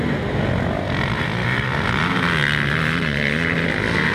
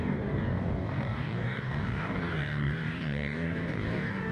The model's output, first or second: second